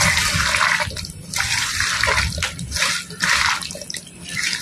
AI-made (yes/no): no